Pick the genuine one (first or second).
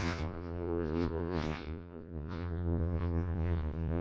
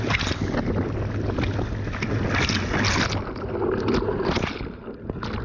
second